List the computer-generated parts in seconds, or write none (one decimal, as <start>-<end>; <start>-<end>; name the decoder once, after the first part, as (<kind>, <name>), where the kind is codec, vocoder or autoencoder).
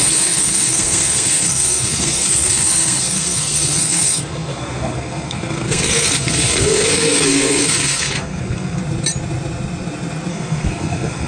0.0-8.8 (codec, SNAC); 10.3-11.3